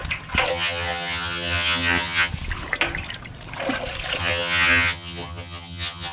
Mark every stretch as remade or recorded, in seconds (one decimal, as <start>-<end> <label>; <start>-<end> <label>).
0.0-0.5 recorded; 0.5-2.3 remade; 2.3-4.2 recorded; 4.2-6.1 remade